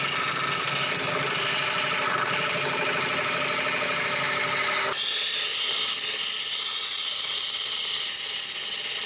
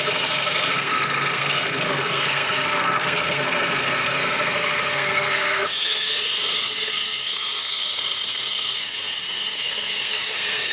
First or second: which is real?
first